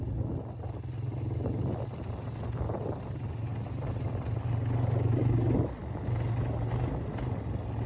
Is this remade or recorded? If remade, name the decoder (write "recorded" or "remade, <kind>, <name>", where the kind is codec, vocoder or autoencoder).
recorded